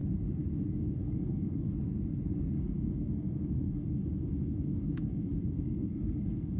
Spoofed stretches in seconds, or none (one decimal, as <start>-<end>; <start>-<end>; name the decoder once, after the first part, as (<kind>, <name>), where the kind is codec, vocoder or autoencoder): 0.8-1.7 (codec, SNAC); 2.6-6.6